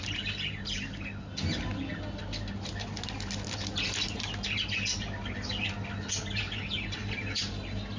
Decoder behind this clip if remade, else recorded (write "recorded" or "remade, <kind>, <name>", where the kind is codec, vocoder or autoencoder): recorded